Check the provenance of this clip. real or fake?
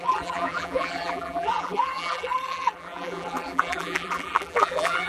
fake